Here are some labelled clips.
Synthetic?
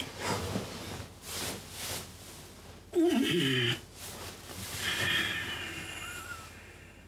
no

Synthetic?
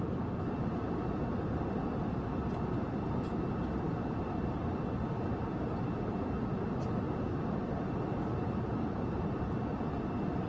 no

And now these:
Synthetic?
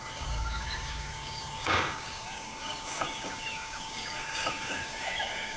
yes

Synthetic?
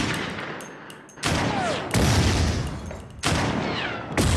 no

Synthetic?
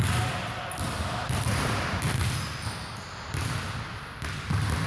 yes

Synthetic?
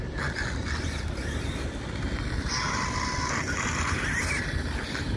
no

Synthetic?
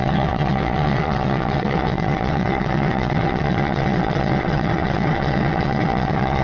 yes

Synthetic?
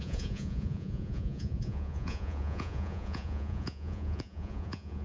yes